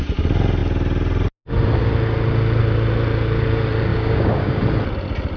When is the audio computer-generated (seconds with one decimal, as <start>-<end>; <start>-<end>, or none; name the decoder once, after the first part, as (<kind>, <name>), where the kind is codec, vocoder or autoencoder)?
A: 3.9-4.6 (codec, DAC)